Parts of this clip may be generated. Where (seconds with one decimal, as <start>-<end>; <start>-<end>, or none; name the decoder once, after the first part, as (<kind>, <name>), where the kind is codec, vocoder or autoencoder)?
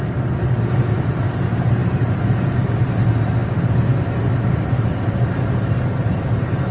none